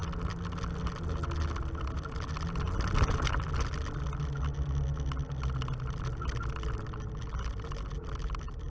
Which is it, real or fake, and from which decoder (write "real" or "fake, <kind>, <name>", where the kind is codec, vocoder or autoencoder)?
real